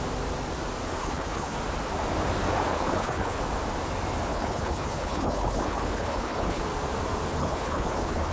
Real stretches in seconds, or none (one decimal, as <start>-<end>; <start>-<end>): 0.0-1.0; 1.6-2.7; 3.4-4.3; 6.6-7.4